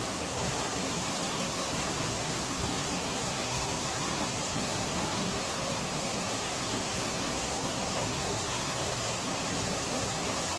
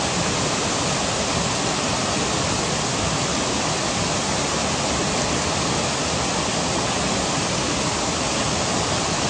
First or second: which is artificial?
first